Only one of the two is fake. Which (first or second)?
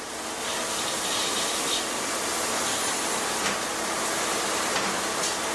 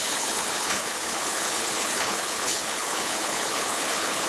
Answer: second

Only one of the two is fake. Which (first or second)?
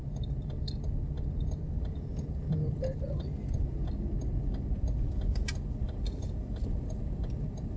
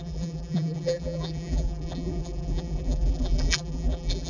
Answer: second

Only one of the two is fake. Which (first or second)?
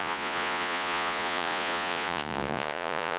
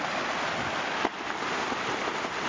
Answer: first